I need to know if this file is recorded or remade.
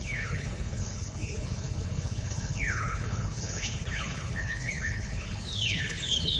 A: remade